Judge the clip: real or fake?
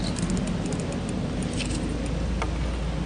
real